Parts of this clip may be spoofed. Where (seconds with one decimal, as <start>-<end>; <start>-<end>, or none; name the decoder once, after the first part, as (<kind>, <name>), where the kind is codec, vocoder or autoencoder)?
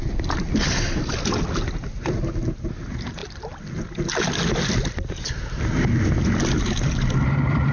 none